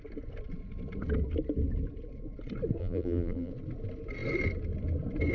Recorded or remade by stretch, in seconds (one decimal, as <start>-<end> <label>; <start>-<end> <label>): 0.0-2.8 recorded; 2.8-3.5 remade; 3.5-5.3 recorded